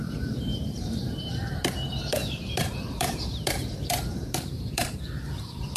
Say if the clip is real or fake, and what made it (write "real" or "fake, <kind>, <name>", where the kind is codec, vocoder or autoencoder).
fake, vocoder, BigVGAN v2